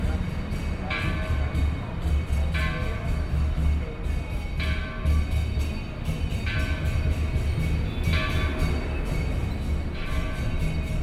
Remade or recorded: recorded